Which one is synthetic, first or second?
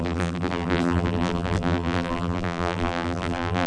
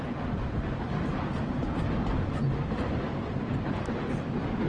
first